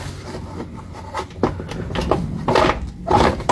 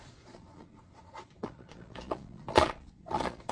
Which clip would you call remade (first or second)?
second